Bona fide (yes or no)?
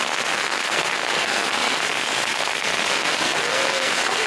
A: no